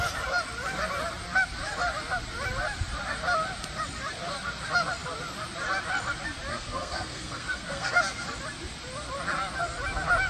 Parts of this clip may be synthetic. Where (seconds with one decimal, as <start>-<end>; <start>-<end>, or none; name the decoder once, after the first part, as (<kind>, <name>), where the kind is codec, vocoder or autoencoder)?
6.5-8.0 (codec, SNAC)